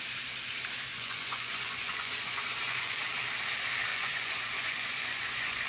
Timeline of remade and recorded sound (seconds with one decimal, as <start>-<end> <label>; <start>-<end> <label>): 0.0-0.9 recorded; 0.9-3.0 remade; 3.0-3.9 recorded; 3.9-5.7 remade